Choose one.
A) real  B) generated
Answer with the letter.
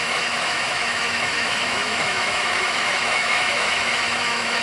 B